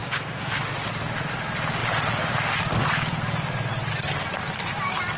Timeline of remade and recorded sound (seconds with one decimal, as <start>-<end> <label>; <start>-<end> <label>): 0.0-0.6 remade; 0.6-5.2 recorded